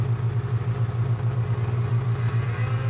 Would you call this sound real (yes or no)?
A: yes